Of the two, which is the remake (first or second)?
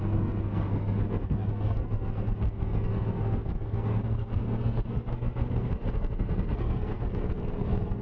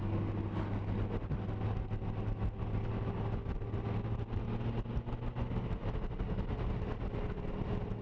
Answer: first